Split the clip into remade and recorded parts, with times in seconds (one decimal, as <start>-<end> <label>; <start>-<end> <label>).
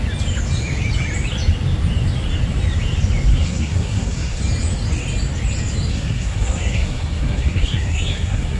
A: 0.0-3.3 recorded; 3.3-4.4 remade; 4.4-5.9 recorded; 5.9-8.6 remade